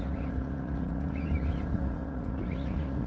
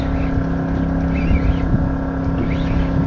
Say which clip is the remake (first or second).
first